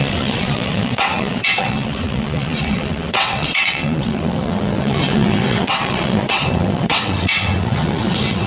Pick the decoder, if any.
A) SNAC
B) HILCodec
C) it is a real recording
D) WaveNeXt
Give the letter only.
D